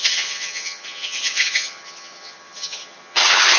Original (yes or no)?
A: no